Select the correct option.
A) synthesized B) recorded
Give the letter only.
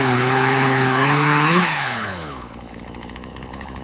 A